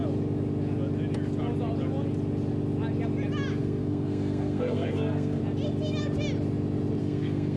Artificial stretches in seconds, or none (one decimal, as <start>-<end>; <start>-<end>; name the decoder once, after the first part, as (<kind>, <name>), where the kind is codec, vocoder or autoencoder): 3.6-5.4 (codec, SNAC); 7.0-7.6